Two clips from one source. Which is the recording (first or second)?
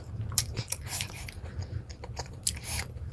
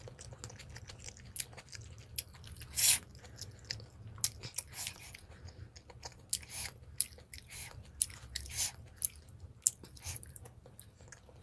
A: second